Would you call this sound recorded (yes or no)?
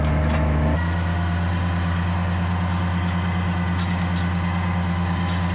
yes